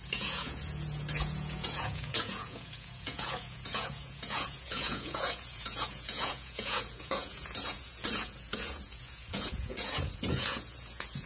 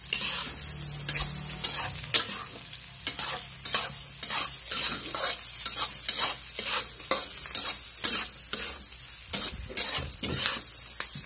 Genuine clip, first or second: second